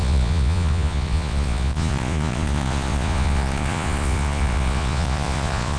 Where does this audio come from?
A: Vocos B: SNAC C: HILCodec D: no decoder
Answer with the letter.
A